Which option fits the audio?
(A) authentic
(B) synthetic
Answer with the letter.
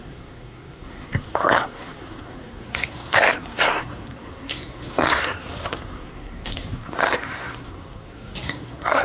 B